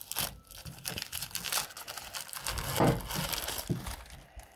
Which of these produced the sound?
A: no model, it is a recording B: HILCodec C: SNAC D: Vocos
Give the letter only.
A